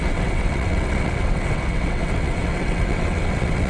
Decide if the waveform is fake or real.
fake